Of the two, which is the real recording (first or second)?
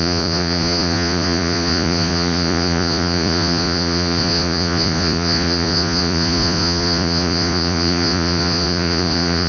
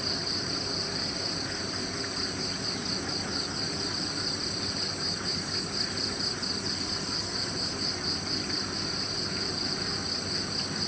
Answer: second